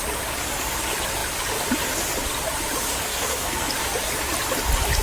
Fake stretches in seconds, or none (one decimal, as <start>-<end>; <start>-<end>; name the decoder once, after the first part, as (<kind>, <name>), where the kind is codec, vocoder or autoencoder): 3.1-3.7 (codec, SNAC)